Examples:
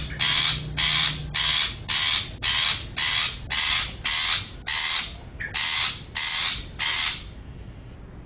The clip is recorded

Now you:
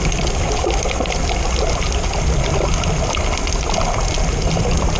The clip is recorded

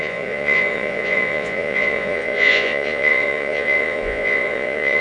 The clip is remade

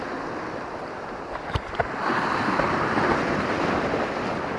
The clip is recorded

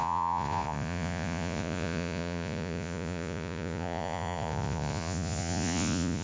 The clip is remade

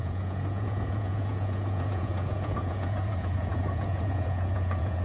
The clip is remade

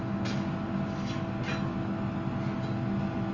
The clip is recorded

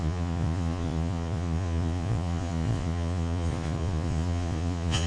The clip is remade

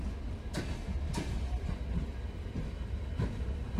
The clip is recorded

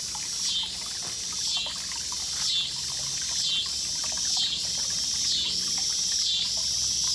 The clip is recorded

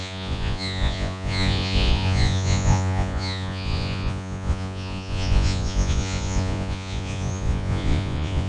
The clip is remade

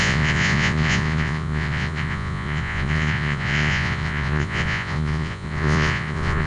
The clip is remade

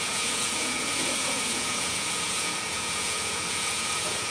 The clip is remade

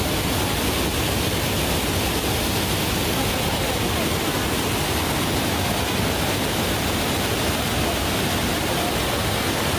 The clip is recorded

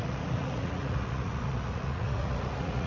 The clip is remade